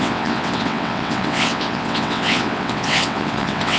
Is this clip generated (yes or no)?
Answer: yes